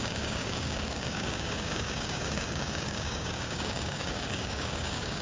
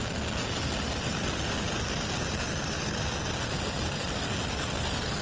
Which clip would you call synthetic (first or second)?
first